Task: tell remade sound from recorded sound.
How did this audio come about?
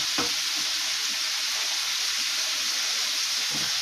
recorded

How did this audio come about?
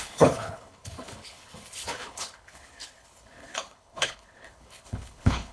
remade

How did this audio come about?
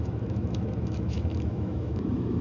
remade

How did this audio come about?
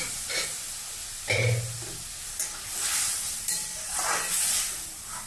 recorded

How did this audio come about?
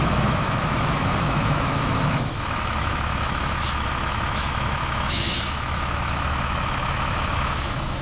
remade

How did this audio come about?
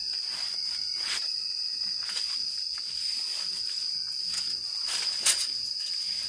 recorded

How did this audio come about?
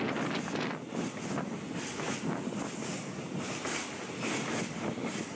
recorded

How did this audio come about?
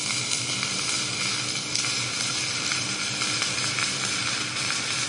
recorded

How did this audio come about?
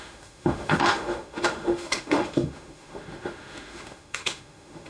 remade